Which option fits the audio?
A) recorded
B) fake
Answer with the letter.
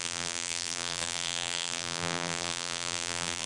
B